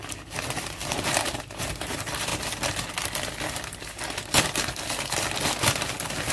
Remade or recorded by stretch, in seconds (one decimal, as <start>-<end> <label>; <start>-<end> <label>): 0.0-0.8 recorded; 0.8-1.6 remade; 1.6-6.3 recorded